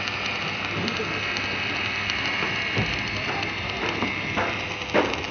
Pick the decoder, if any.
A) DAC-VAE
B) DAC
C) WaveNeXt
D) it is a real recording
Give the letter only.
D